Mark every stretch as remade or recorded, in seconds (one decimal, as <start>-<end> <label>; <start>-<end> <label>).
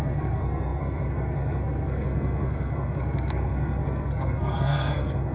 0.0-5.3 remade